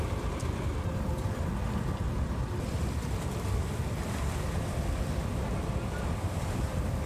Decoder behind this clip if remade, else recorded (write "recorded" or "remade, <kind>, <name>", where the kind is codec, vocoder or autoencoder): remade, vocoder, BigVGAN v2